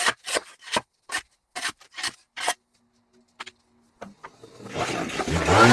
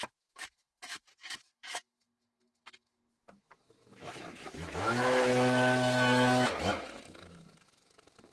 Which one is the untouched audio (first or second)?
first